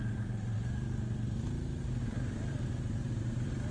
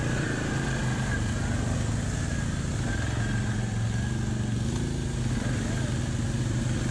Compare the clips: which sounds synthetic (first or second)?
first